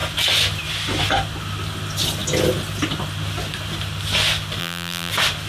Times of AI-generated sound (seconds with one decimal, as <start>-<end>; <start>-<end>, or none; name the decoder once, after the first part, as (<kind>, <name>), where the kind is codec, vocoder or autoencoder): 4.6-5.1 (vocoder, BigVGAN v2)